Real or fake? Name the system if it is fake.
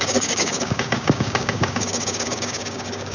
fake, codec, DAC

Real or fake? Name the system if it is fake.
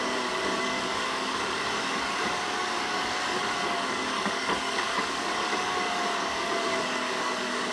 fake, codec, DAC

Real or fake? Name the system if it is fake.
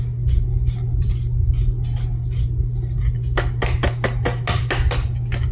real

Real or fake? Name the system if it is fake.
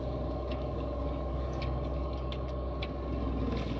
fake, codec, DAC